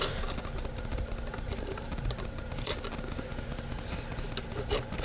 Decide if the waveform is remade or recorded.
recorded